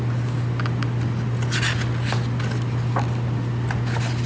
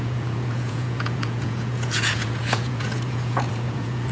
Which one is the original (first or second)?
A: first